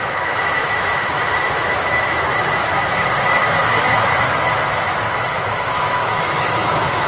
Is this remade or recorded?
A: remade